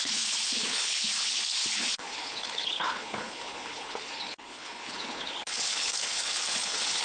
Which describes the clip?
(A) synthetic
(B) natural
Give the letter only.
A